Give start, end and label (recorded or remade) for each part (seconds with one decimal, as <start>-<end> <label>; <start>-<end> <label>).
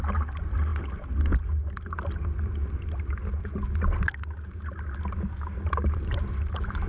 0.0-6.9 recorded